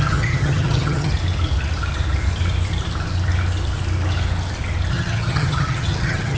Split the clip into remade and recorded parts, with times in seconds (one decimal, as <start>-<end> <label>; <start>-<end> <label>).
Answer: 0.0-1.1 remade; 1.1-4.9 recorded; 4.9-6.4 remade